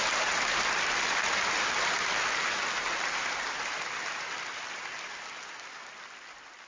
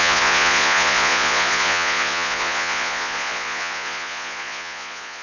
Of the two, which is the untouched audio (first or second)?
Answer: first